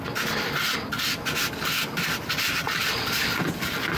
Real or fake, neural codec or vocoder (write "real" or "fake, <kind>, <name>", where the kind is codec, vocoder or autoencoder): real